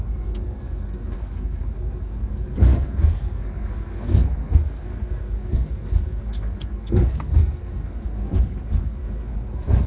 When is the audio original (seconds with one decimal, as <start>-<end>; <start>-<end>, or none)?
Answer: none